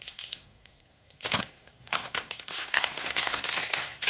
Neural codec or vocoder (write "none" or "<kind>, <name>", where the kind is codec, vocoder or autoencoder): codec, SNAC